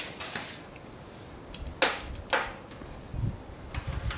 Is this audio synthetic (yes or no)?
no